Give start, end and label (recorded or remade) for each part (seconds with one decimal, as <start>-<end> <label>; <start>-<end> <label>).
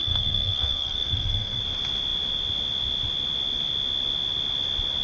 0.0-1.6 remade; 1.6-5.0 recorded